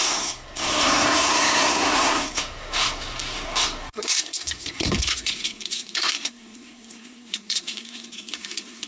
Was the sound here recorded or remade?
remade